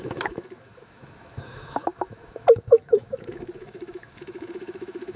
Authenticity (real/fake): fake